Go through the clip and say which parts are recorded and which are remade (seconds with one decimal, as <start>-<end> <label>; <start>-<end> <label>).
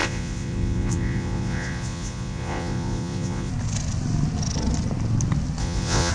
0.0-3.5 remade; 3.5-5.6 recorded; 5.6-6.1 remade